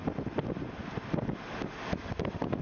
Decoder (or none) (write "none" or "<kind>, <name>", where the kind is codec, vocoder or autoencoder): none